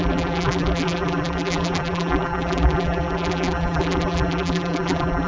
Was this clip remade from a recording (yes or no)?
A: yes